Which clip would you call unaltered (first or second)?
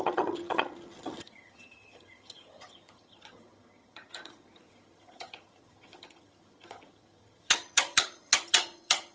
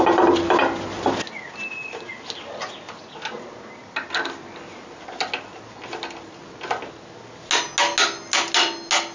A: second